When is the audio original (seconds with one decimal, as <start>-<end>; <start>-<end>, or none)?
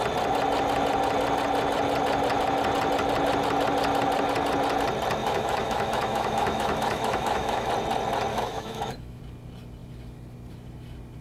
0.0-5.2; 7.7-8.3; 9.2-11.2